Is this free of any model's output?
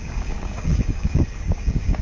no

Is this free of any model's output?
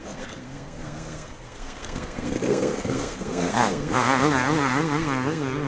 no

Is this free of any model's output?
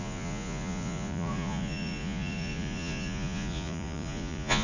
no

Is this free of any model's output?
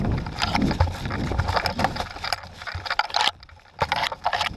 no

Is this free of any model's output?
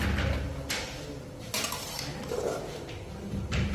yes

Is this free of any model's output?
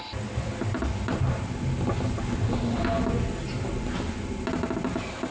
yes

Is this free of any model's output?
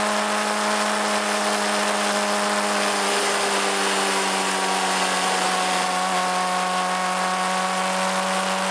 yes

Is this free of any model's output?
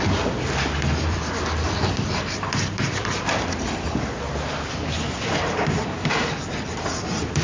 no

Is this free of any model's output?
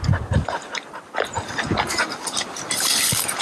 yes